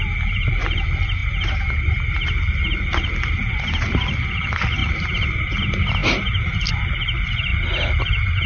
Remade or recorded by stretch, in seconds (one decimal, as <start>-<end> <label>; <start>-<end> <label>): 0.0-4.8 recorded; 4.8-5.6 remade; 5.6-8.5 recorded